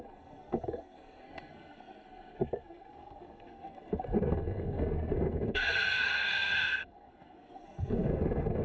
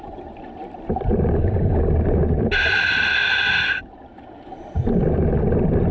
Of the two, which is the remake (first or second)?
first